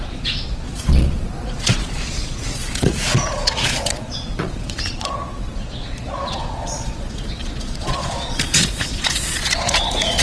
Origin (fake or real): fake